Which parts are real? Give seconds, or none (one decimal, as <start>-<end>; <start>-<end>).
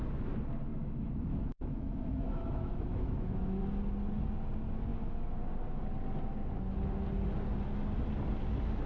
0.0-0.7; 3.6-8.9